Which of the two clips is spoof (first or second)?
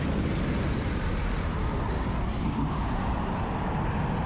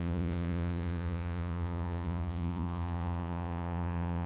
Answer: second